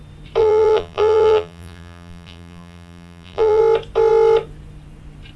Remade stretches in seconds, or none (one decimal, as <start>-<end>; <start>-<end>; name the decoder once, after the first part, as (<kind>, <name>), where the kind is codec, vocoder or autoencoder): 0.4-3.6 (vocoder, BigVGAN v2)